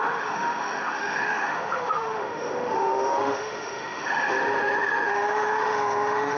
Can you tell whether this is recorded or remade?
remade